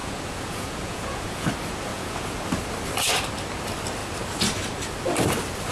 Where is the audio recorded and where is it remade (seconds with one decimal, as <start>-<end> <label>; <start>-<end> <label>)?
0.0-1.5 remade; 1.5-1.9 recorded; 1.9-2.5 remade; 2.5-5.7 recorded